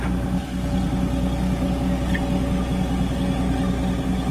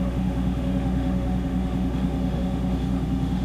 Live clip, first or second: first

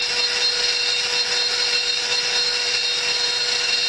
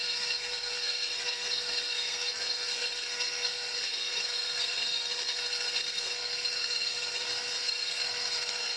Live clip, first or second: first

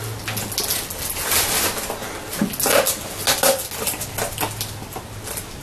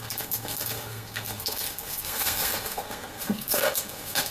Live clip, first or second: first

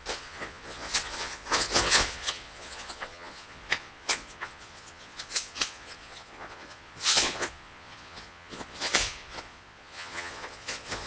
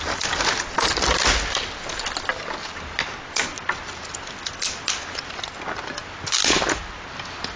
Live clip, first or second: second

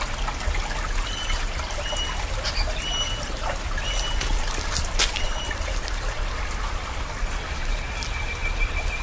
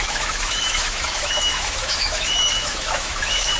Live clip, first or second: first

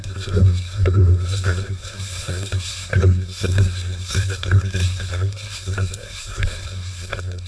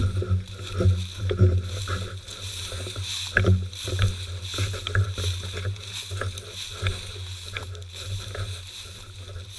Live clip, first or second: second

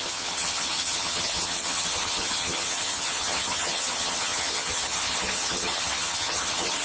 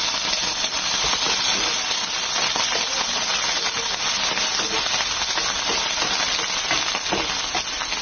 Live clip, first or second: second